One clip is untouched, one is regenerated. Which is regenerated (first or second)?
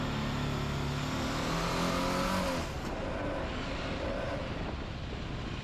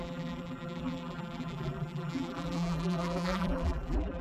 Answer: second